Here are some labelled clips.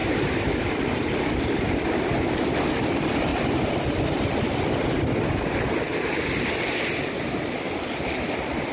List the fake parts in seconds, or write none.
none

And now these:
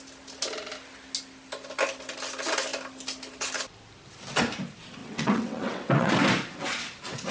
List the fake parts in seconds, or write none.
5.0-6.1 (vocoder, WaveNeXt)

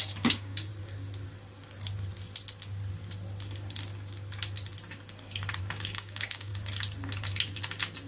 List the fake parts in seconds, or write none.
0.0-0.7 (codec, DAC); 5.6-6.5

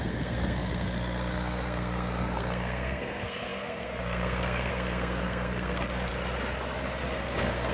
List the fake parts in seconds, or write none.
0.0-6.1 (codec, SNAC); 7.0-7.7